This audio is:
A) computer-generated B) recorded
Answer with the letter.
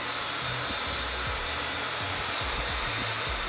B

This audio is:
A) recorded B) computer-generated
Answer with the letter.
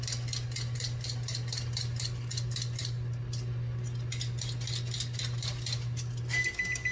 A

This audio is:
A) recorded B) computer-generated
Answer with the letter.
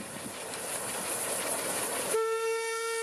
A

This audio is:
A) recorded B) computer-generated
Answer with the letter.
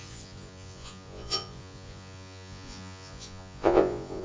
B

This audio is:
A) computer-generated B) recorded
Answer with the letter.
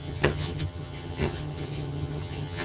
A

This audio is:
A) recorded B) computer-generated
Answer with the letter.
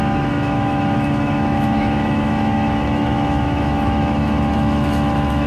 B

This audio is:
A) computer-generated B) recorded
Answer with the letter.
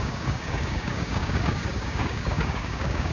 A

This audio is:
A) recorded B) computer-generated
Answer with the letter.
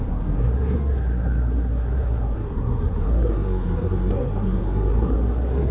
B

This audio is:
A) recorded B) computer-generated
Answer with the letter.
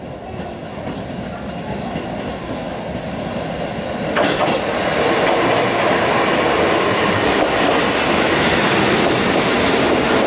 A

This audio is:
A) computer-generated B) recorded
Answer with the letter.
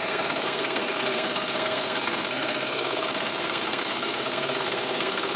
A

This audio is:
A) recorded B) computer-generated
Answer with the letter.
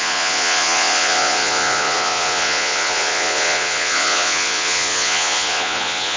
B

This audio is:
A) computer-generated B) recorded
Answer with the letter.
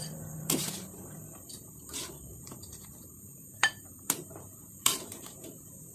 A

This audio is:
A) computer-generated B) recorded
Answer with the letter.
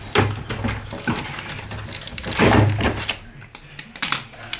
B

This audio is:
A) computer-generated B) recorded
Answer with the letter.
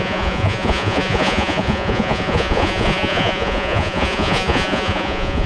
A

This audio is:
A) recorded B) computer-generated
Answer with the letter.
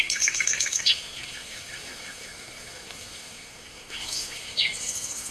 B